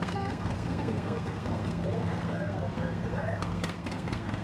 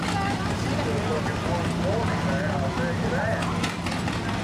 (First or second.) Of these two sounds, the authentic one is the second